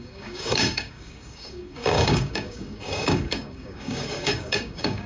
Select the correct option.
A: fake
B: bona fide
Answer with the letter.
A